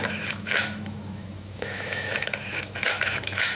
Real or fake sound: fake